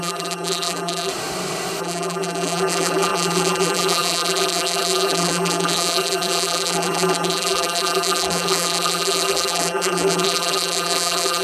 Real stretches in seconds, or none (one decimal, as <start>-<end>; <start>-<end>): 1.1-1.8